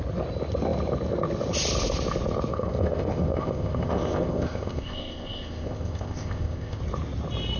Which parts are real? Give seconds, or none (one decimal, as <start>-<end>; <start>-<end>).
0.0-2.5; 6.8-7.6